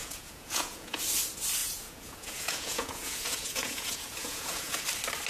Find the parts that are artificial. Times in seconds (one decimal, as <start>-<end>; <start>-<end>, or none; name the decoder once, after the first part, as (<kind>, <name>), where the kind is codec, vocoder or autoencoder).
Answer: 0.0-1.0 (vocoder, Vocos); 1.6-4.8